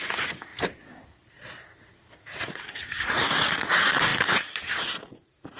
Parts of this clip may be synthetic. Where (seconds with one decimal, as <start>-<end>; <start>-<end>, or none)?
0.0-0.5; 2.2-4.1; 4.7-5.6

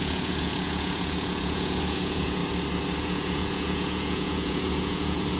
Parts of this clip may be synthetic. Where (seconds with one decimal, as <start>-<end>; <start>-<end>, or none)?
0.0-2.4; 3.0-5.4

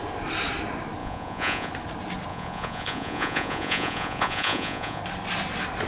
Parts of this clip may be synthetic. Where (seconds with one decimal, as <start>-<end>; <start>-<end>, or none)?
1.0-1.7; 2.3-5.0

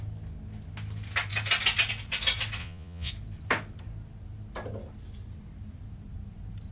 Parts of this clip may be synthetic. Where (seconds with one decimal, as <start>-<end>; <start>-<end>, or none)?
2.6-3.1